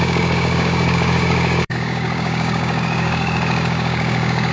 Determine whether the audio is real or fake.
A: fake